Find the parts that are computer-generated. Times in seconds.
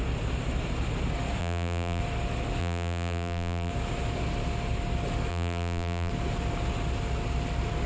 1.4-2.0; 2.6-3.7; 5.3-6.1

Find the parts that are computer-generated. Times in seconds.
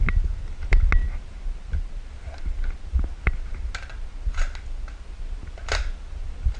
none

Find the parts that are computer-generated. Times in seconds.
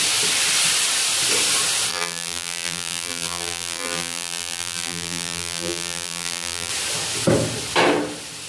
1.9-6.7